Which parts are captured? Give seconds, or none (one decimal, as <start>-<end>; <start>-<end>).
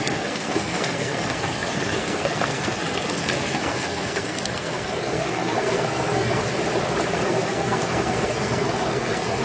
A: 6.4-7.1